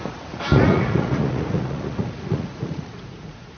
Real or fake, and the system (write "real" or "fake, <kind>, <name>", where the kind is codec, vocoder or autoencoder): fake, vocoder, Vocos